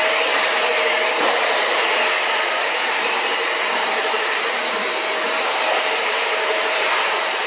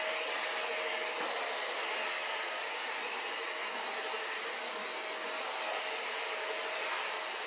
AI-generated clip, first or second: first